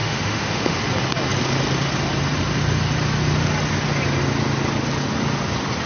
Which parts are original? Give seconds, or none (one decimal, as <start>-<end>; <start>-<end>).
0.8-5.9